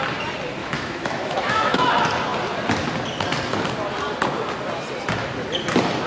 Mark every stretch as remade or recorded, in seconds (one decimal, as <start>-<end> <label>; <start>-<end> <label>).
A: 0.0-0.6 recorded; 0.6-1.9 remade; 1.9-6.1 recorded